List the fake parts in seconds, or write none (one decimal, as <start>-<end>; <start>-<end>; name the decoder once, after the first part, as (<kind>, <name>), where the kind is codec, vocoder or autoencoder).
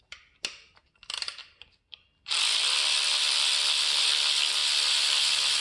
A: 1.4-3.6 (vocoder, BigVGAN v2)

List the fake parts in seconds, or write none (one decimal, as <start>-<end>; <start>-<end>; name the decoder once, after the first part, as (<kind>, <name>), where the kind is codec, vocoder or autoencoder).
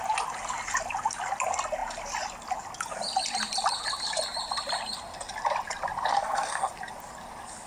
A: 6.1-6.7 (codec, SNAC)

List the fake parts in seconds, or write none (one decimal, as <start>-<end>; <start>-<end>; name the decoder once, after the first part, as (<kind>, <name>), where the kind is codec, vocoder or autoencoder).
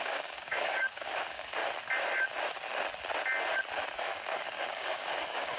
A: 0.0-1.6 (codec, DAC); 4.0-5.6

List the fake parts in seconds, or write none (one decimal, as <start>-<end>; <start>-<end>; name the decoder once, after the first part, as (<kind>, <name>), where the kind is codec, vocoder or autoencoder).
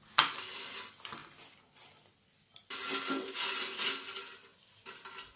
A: none